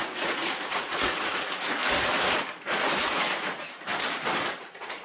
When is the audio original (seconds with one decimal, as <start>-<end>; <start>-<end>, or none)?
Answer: 1.8-2.6; 3.9-4.5